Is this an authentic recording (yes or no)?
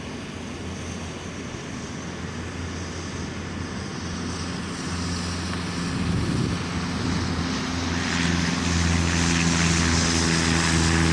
yes